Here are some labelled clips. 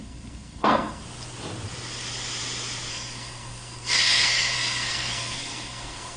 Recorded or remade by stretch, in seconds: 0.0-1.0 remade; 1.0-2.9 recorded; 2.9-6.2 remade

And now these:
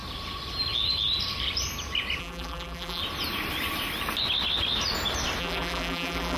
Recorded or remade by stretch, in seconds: 0.0-2.2 recorded; 2.2-3.0 remade; 3.0-5.4 recorded; 5.4-6.4 remade

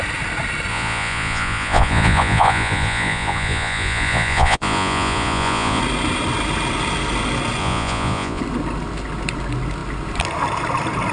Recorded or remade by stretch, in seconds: 0.0-0.7 recorded; 0.7-5.8 remade; 5.8-7.6 recorded; 7.6-8.4 remade; 8.4-11.1 recorded

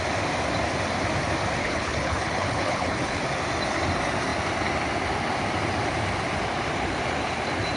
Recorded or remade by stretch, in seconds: 0.0-1.6 recorded; 1.6-3.2 remade; 3.2-7.8 recorded

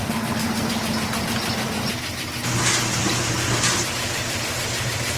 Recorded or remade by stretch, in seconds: 0.0-0.7 remade; 0.7-5.2 recorded